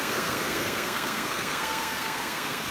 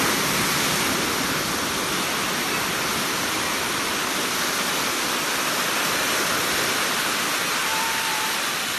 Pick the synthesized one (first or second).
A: first